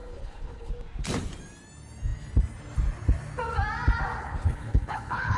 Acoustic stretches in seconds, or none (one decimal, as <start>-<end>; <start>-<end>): 0.7-4.2